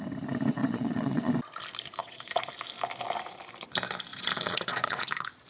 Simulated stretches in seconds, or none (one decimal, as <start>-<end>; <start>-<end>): 0.6-1.3; 2.0-2.5; 4.1-5.5